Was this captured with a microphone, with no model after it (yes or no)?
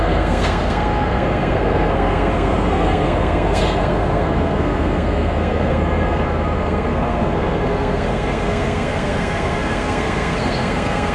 no